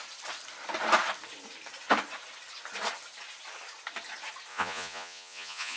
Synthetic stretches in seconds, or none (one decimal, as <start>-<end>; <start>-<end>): 4.5-5.8